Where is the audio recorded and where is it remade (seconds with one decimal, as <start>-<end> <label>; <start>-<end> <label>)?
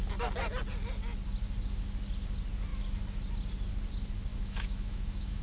0.0-4.3 recorded; 4.3-5.4 remade